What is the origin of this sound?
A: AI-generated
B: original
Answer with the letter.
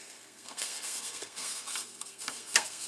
A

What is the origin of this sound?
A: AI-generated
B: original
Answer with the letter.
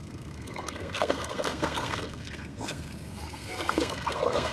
A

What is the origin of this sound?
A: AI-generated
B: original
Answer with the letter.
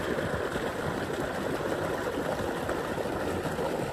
B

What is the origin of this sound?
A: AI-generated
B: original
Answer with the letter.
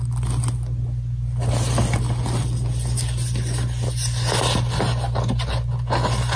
B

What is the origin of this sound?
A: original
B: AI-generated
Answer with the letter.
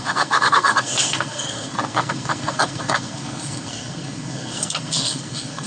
B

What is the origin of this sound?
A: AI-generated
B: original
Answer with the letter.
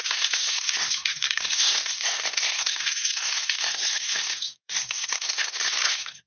A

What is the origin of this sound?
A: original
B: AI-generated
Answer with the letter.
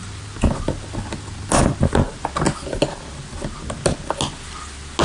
A